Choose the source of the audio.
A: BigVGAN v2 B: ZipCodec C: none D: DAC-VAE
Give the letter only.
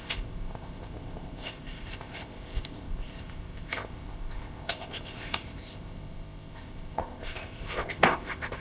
B